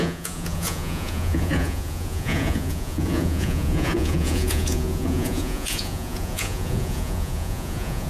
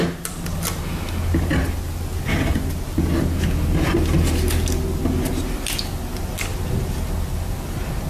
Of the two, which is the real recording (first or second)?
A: second